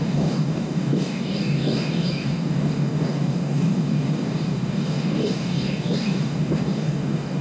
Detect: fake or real fake